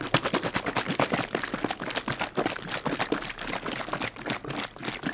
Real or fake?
real